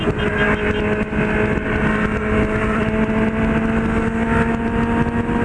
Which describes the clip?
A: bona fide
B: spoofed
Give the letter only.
A